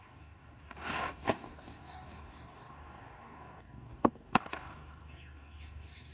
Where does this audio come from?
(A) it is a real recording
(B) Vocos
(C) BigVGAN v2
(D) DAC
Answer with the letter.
D